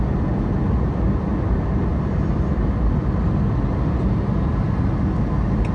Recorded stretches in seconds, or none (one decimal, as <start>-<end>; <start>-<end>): 0.0-5.7